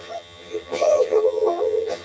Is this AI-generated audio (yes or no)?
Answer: yes